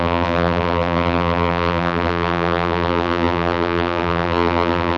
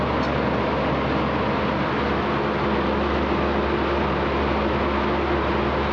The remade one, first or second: first